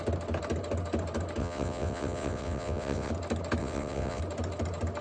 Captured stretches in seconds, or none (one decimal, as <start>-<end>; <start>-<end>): 0.0-1.4; 3.1-3.6; 4.2-5.0